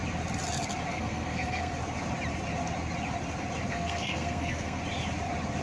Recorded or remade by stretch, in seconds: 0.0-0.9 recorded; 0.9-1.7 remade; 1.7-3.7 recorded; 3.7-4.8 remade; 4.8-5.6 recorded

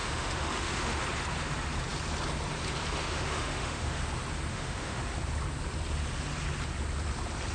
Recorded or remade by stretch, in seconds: 0.0-1.0 remade; 1.0-3.0 recorded; 3.0-4.0 remade; 4.0-4.5 recorded; 4.5-5.0 remade; 5.0-7.5 recorded

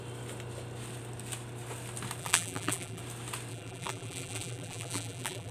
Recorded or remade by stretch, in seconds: 0.0-2.2 recorded; 2.2-3.0 remade; 3.0-3.5 recorded; 3.5-5.5 remade

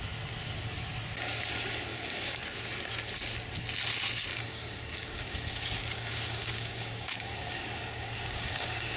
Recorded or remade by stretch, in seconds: 0.0-1.9 recorded; 1.9-2.4 remade; 2.4-4.3 recorded; 4.3-9.0 remade

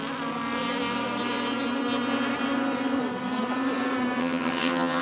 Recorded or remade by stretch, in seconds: 0.0-4.2 recorded; 4.2-5.0 remade

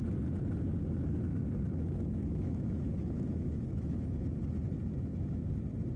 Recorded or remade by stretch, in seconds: 0.0-0.8 recorded; 0.8-4.4 remade; 4.4-5.1 recorded; 5.1-5.6 remade; 5.6-6.0 recorded